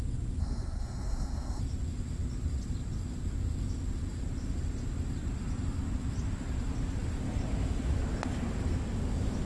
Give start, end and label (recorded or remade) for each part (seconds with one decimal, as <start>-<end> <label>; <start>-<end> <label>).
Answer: 0.0-0.4 recorded; 0.4-1.6 remade; 1.6-9.5 recorded